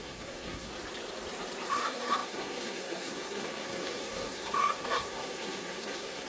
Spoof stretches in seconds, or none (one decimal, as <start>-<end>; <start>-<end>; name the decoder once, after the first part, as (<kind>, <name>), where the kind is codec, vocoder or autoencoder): 0.0-0.7 (codec, SNAC); 1.7-6.3